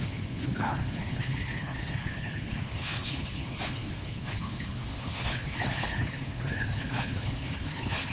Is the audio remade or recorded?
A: remade